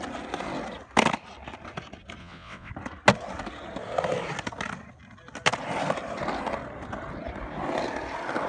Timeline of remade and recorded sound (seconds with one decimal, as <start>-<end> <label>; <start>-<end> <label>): 0.0-2.2 recorded; 2.2-2.7 remade; 2.7-8.5 recorded